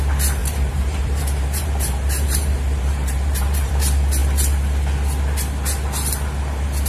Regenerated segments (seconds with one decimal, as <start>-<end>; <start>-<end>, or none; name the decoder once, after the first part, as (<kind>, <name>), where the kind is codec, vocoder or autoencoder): 0.4-3.7 (vocoder, BigVGAN v2)